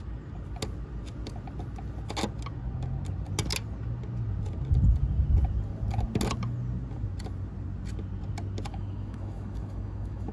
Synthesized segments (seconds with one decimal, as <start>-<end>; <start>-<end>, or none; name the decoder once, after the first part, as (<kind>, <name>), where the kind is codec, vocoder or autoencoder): 8.7-10.3 (autoencoder, DAC-VAE)